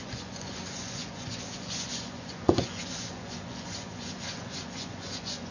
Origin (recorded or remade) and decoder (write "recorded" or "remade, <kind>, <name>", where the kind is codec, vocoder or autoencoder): remade, vocoder, Vocos